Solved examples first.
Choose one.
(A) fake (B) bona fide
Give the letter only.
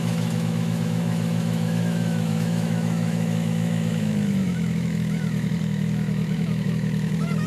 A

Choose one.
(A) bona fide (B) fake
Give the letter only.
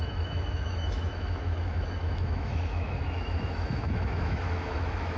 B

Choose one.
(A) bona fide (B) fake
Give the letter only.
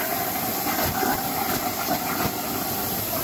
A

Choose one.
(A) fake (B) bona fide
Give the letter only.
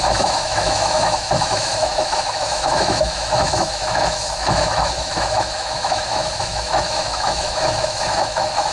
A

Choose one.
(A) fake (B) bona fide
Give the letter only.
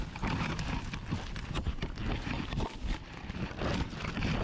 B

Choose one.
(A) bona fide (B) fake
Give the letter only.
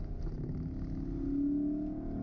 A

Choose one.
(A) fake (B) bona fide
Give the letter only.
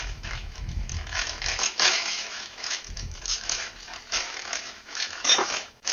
A